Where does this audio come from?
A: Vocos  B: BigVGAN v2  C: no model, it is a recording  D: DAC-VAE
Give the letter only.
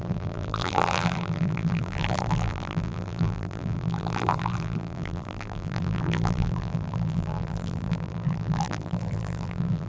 B